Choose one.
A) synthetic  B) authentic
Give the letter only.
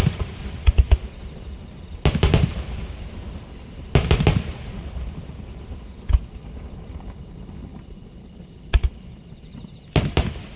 B